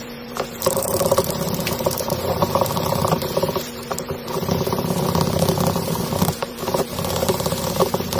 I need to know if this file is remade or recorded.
remade